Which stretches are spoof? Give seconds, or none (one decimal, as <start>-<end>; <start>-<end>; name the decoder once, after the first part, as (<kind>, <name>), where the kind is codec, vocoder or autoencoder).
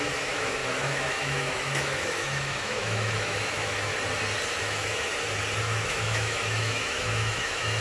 0.0-3.9 (autoencoder, DAC-VAE); 4.6-5.1; 5.6-7.8